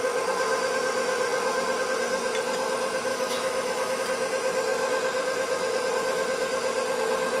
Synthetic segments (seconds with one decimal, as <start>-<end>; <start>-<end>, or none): 3.1-4.0